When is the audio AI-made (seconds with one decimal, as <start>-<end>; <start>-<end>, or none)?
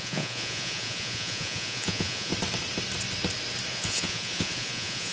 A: 0.0-2.3; 3.7-5.1